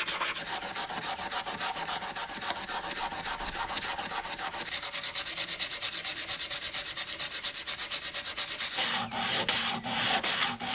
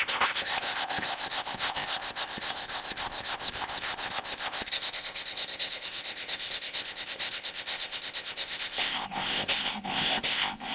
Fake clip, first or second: second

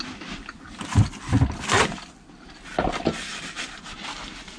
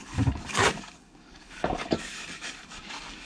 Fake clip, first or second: second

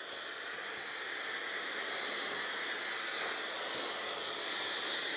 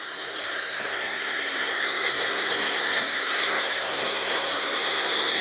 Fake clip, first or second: second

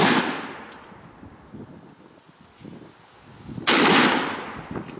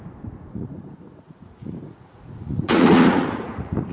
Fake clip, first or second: second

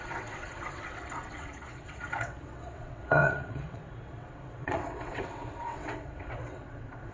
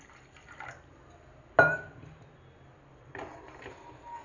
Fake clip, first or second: first